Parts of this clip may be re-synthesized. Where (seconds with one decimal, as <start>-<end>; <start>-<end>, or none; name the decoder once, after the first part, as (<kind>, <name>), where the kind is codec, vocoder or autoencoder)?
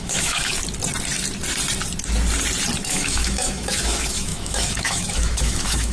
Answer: 0.0-0.5 (autoencoder, DAC-VAE); 2.8-5.9